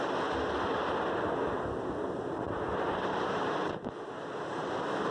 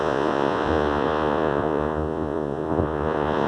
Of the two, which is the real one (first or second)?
first